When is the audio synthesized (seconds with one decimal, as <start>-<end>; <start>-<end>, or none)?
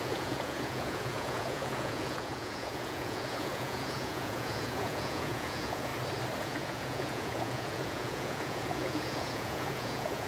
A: 0.0-5.9; 6.4-10.3